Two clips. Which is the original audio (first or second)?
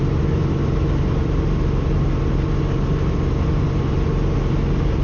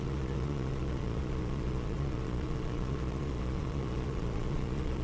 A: first